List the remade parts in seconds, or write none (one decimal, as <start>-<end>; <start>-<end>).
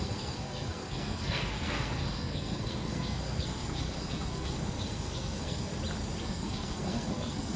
0.0-5.7; 6.2-7.6